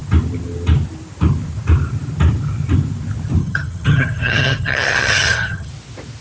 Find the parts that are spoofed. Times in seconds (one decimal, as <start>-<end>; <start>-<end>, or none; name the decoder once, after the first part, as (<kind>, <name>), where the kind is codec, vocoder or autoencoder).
3.4-5.7 (vocoder, HiFi-GAN)